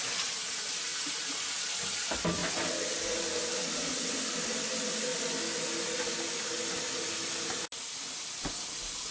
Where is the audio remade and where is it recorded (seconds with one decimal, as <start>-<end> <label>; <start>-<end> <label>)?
0.0-0.9 recorded; 0.9-1.6 remade; 1.6-9.1 recorded